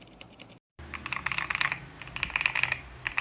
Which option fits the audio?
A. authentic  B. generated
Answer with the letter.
A